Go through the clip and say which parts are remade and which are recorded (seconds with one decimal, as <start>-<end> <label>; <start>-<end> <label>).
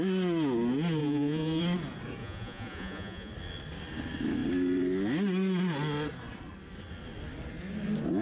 0.0-1.0 recorded; 1.0-1.6 remade; 1.6-2.2 recorded; 2.2-3.3 remade; 3.3-8.2 recorded